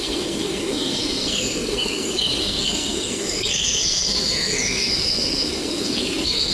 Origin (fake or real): fake